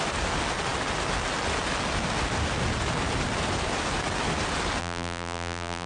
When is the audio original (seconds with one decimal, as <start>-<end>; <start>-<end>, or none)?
0.0-4.8